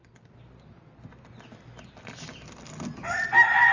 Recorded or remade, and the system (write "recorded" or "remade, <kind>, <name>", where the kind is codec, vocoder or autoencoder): recorded